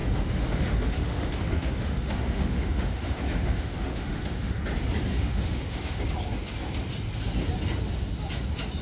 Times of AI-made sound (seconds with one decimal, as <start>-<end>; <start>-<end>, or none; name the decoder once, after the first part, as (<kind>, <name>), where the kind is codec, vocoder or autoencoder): 0.0-4.6 (autoencoder, DAC-VAE); 5.1-6.0